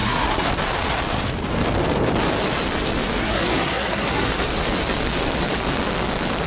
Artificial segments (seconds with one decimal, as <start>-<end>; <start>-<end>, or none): 0.0-0.5; 3.2-4.3